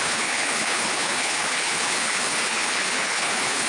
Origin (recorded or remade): remade